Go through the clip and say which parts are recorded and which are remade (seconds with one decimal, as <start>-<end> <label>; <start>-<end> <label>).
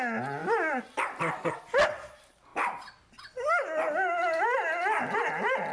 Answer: 0.0-0.4 recorded; 0.4-1.0 remade; 1.0-5.7 recorded